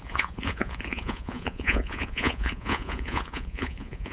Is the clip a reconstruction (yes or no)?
yes